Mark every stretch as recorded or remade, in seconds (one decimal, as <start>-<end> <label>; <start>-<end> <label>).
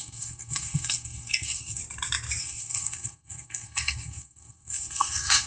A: 0.0-1.8 remade; 1.8-2.4 recorded; 2.4-5.5 remade